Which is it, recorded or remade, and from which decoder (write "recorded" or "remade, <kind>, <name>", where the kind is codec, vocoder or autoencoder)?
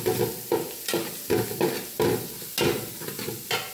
recorded